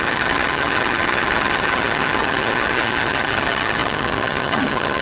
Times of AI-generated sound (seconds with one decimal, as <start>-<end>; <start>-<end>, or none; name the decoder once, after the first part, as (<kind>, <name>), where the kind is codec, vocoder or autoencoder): 0.0-5.0 (vocoder, HiFi-GAN)